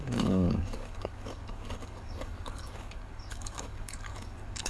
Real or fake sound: fake